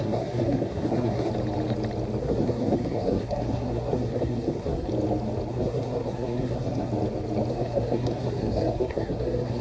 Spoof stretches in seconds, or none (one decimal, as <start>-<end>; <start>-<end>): 0.0-1.3; 2.2-4.9; 5.5-6.9; 7.5-9.6